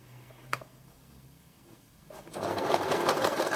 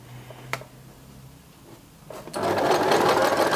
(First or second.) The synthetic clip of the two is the first